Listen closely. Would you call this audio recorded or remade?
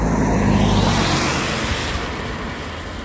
recorded